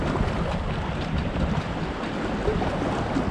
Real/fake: real